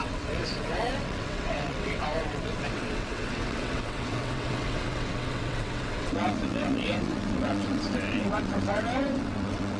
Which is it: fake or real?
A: fake